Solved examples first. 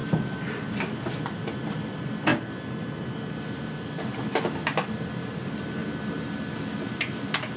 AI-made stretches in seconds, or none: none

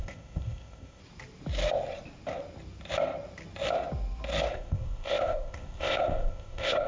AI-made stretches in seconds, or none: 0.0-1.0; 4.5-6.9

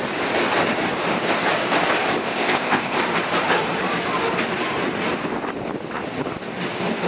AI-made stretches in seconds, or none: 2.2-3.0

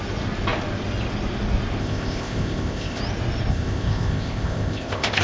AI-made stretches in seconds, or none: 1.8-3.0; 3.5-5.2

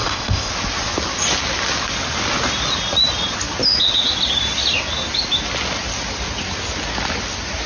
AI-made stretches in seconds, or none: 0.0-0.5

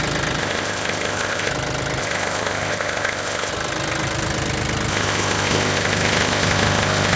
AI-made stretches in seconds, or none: 0.4-1.5; 2.0-3.5; 4.9-7.2

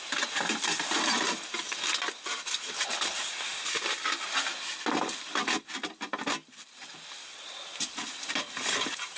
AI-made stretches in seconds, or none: none